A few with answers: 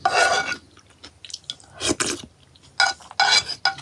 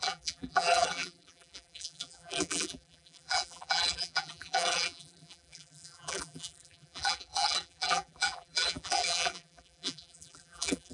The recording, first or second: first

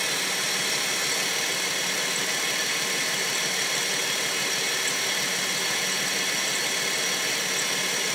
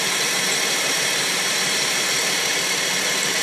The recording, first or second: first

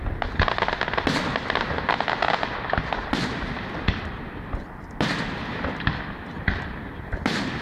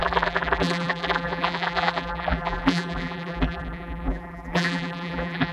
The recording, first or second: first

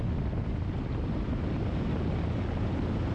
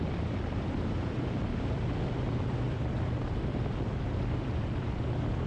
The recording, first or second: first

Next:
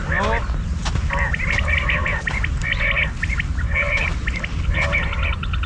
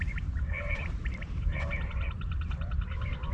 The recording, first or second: first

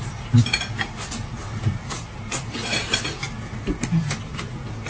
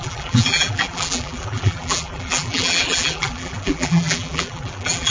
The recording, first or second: first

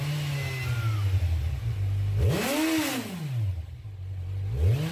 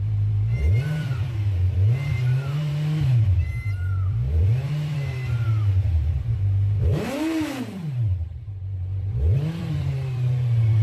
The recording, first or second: first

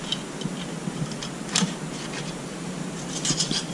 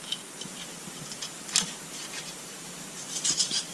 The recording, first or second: first